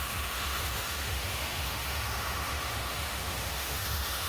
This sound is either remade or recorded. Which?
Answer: remade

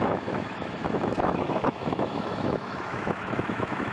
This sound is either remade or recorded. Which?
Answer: remade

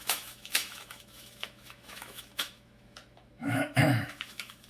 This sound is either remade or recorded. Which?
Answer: remade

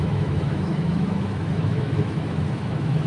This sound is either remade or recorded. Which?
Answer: remade